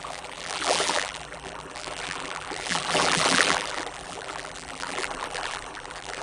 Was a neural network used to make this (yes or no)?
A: yes